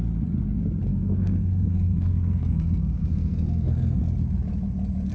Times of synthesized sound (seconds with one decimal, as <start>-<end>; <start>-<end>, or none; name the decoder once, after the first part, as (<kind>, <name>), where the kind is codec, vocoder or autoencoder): 0.9-4.0 (codec, SNAC)